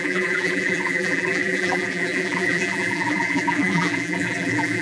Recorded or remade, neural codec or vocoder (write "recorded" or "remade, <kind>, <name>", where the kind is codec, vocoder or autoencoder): remade, vocoder, BigVGAN v2